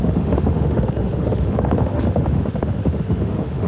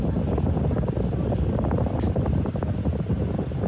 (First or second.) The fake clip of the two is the first